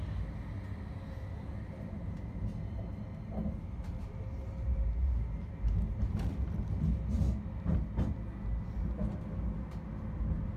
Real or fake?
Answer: real